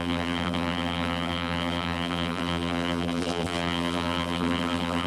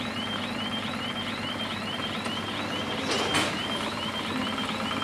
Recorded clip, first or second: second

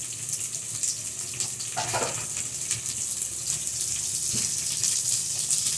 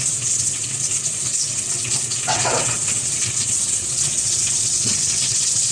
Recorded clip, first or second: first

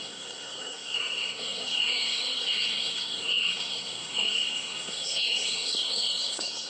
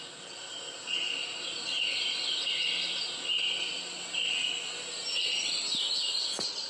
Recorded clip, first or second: second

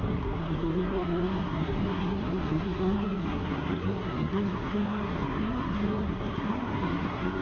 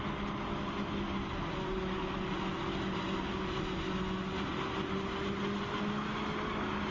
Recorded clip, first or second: second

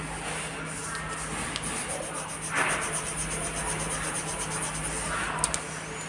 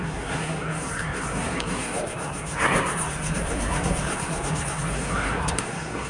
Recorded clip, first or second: first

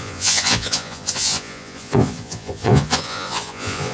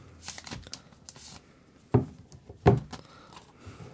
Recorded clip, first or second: second